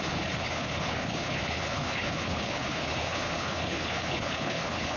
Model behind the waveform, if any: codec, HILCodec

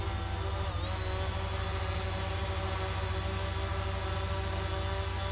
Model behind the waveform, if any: none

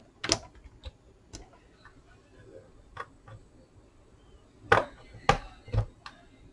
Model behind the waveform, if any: none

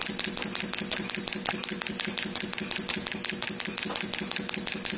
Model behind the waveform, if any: none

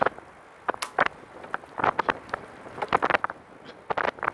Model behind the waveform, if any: none